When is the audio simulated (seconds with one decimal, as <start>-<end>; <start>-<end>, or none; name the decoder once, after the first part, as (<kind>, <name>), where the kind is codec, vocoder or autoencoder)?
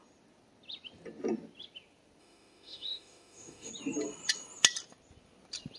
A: 2.2-3.7 (autoencoder, DAC-VAE)